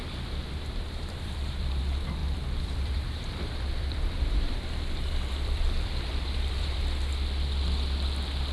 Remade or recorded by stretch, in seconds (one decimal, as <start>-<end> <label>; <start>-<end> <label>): 0.0-1.8 remade; 1.8-2.2 recorded; 2.2-6.8 remade; 6.8-8.5 recorded